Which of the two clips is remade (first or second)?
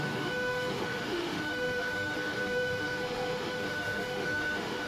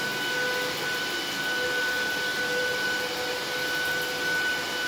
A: first